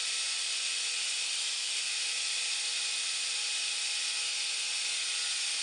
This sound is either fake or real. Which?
real